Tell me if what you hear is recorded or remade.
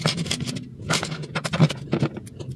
recorded